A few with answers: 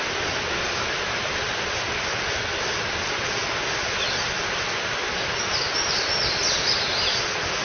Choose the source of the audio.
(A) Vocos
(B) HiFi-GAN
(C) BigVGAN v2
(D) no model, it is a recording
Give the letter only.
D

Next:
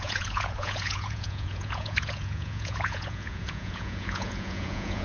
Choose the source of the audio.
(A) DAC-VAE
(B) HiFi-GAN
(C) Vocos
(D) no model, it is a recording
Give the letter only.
C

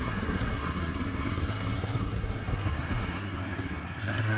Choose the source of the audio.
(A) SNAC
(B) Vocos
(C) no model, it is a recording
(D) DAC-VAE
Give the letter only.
A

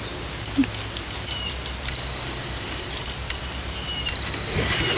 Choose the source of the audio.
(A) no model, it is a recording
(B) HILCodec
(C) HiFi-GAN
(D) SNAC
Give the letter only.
A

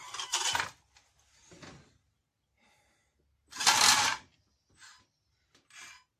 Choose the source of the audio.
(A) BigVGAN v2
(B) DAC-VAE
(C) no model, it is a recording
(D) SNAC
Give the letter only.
C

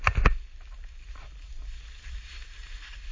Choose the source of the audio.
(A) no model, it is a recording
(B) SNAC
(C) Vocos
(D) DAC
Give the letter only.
A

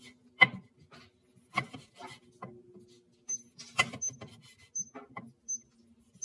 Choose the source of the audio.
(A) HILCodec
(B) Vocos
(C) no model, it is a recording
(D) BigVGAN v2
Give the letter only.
C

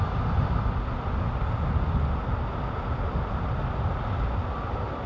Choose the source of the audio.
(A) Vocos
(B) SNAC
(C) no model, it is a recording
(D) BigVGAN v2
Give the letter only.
C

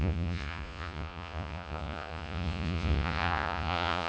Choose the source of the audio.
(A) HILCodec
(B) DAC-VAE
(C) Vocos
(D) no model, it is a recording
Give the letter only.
C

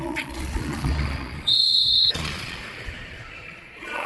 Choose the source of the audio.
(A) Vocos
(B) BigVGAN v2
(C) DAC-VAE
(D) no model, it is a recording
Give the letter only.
A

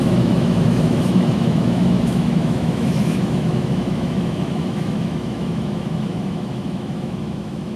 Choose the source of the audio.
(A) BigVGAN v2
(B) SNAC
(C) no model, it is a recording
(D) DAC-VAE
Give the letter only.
D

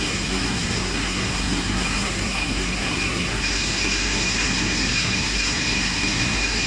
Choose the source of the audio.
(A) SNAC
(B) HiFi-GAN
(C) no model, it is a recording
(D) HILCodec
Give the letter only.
A